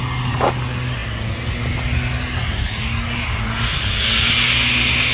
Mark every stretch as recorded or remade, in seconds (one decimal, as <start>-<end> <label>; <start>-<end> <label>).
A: 0.0-5.1 recorded